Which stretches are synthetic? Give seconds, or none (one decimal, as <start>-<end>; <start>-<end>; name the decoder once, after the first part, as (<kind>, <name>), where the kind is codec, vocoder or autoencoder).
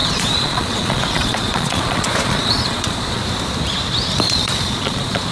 0.0-3.2 (vocoder, Vocos); 4.2-5.3